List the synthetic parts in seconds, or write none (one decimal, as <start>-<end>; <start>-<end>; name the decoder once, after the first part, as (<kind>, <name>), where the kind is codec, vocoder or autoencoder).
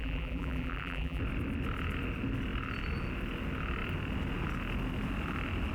0.0-1.2 (vocoder, BigVGAN v2)